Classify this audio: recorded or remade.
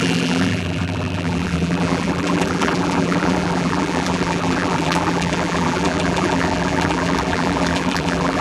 remade